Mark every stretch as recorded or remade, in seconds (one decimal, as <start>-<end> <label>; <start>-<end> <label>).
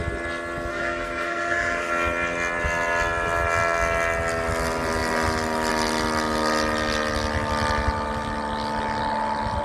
0.0-0.7 recorded; 0.7-1.9 remade; 1.9-9.6 recorded